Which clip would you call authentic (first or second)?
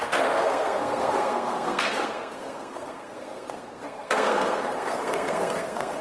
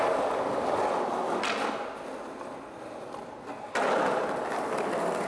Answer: second